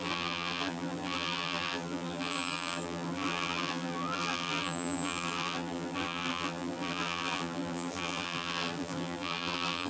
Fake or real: fake